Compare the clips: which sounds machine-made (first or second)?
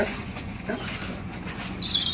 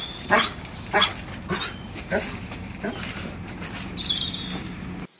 first